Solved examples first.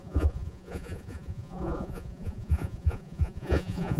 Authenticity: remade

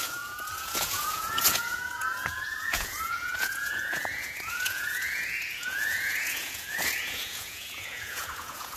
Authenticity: remade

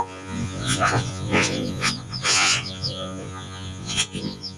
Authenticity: remade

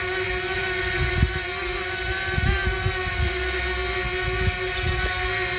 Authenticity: recorded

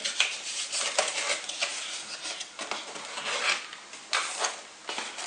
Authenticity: recorded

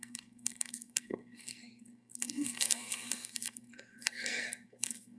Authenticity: remade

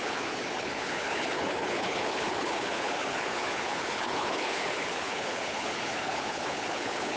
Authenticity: remade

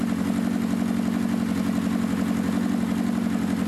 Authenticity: recorded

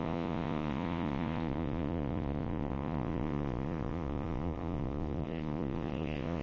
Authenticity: remade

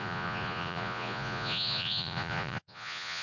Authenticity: remade